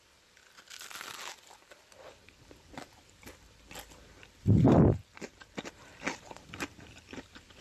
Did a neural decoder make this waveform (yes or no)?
yes